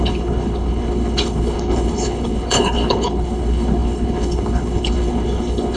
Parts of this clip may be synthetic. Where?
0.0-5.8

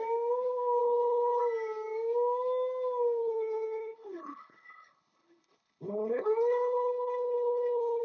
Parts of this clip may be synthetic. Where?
0.8-1.4; 3.2-8.0

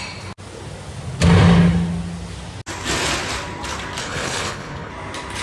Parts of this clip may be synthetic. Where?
4.0-4.9

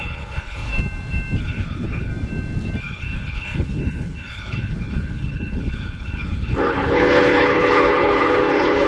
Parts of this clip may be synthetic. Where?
0.0-0.7; 1.4-2.1; 2.8-8.9

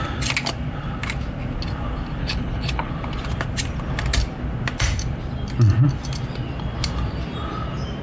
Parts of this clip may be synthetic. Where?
2.2-2.9